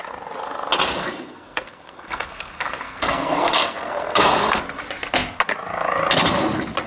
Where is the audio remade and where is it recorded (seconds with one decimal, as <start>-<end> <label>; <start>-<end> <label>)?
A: 0.0-1.0 recorded; 1.0-4.6 remade; 4.6-6.9 recorded